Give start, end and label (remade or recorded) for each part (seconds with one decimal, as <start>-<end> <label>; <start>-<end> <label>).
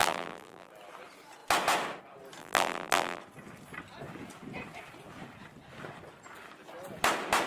0.0-0.7 remade; 0.7-2.4 recorded; 2.4-3.2 remade; 3.2-7.5 recorded